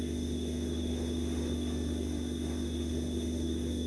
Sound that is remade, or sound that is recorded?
remade